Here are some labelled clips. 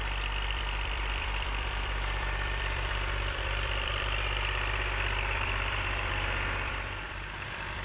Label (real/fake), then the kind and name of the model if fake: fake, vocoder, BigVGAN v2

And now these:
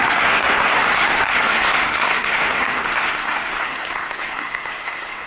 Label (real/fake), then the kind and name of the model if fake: fake, codec, SNAC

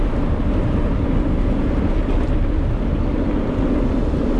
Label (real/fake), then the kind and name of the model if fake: real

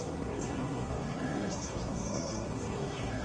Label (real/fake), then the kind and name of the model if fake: fake, codec, SNAC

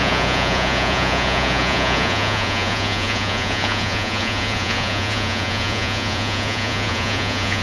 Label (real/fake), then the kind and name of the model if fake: fake, vocoder, Vocos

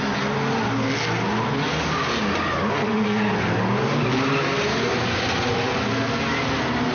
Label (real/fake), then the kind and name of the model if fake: real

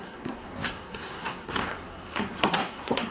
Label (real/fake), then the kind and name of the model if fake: fake, codec, SNAC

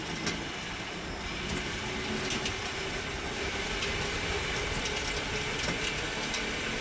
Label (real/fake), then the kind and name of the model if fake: real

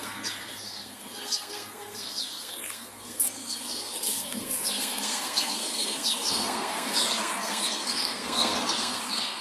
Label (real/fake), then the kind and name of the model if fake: fake, codec, SNAC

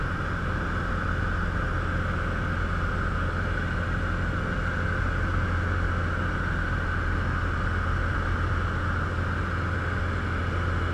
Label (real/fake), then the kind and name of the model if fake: real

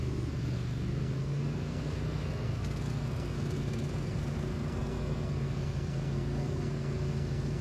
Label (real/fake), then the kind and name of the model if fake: fake, codec, SNAC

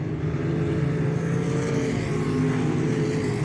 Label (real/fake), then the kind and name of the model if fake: real